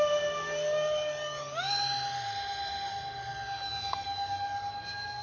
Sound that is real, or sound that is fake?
real